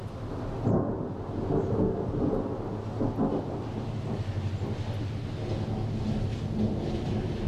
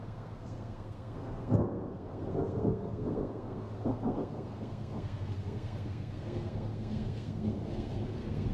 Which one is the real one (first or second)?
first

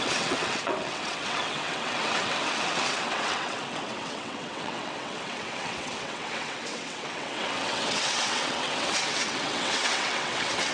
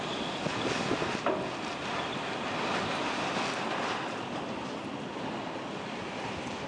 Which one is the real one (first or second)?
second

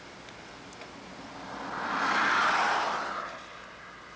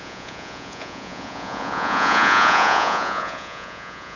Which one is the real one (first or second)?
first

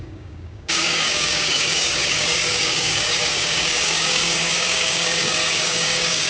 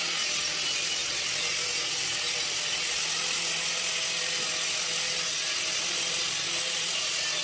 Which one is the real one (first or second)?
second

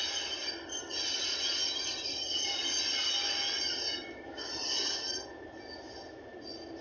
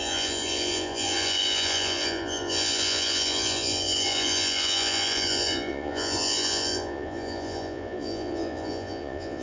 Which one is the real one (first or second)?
first